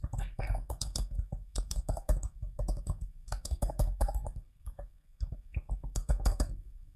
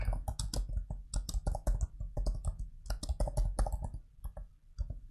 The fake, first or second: first